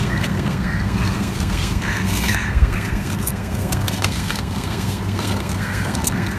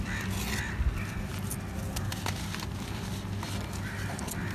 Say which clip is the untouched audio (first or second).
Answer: second